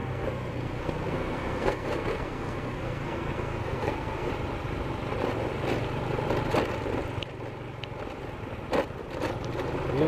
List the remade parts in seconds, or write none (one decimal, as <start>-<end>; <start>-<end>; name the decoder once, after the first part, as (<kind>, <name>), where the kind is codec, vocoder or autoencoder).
0.0-4.3 (codec, SNAC)